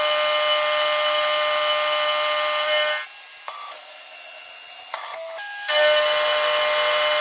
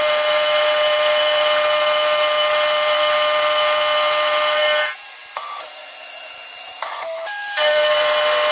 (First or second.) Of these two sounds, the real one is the first